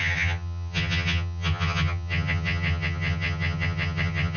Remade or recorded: remade